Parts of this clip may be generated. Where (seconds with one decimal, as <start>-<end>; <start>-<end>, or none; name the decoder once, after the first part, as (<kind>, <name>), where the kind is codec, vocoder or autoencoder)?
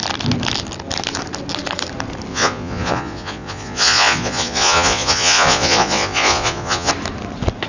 2.3-6.9 (vocoder, Vocos)